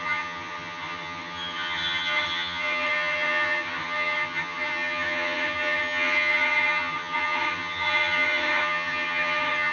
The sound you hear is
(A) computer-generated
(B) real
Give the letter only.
A